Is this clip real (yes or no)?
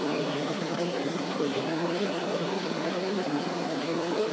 no